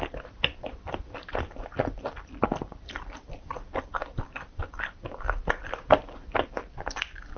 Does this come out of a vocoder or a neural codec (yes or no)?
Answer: yes